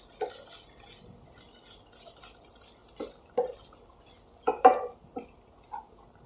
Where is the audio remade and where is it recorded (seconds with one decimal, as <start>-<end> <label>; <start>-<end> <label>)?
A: 0.0-6.3 recorded

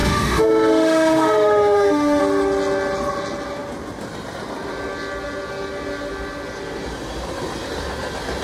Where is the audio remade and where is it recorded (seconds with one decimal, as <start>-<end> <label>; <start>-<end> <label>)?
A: 0.0-2.2 remade; 2.2-8.4 recorded

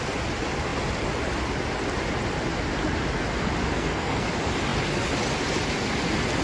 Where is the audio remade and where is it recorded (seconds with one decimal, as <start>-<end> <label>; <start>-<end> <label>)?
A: 0.0-3.7 recorded; 3.7-4.3 remade; 4.3-6.4 recorded